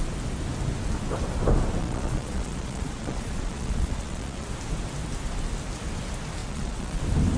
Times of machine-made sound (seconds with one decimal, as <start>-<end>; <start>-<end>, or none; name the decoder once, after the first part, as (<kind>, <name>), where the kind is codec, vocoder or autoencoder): 1.8-4.5 (vocoder, Vocos); 6.4-7.0